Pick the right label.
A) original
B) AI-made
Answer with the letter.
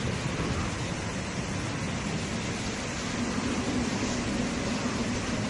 A